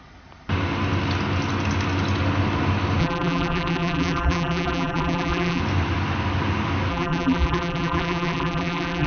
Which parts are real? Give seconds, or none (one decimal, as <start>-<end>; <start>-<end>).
0.0-3.0; 5.6-6.9